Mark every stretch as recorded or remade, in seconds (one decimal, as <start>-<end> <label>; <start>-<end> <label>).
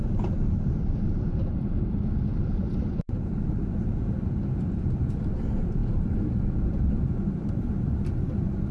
0.0-8.7 remade